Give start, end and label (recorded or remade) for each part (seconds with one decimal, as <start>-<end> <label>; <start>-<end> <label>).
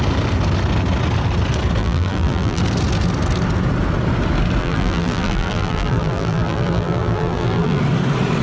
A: 0.0-1.8 recorded; 1.8-2.6 remade; 2.6-4.6 recorded; 4.6-7.8 remade; 7.8-8.4 recorded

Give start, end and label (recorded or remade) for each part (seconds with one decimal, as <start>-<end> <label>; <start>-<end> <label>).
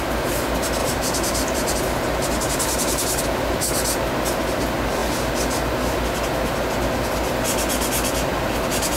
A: 0.0-0.8 recorded; 0.8-3.2 remade; 3.2-9.0 recorded